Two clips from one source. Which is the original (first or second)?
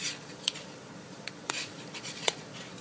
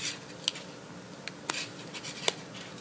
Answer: second